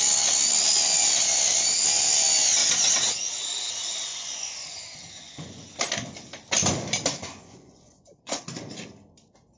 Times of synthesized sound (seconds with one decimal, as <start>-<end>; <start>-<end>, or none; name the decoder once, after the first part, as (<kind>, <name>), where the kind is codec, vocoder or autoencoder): 4.1-5.6 (vocoder, Vocos); 7.2-8.4